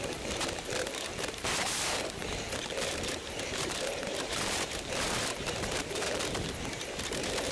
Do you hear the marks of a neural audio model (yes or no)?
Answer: yes